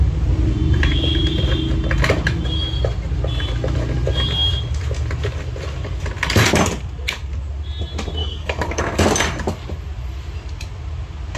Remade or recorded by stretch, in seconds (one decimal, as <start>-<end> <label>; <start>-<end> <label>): 0.0-8.2 recorded; 8.2-8.8 remade; 8.8-11.4 recorded